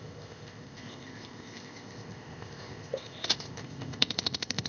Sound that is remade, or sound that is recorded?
remade